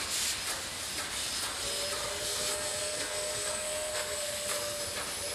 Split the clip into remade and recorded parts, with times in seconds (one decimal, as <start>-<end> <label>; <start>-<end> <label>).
0.0-2.0 recorded; 2.0-4.8 remade; 4.8-5.3 recorded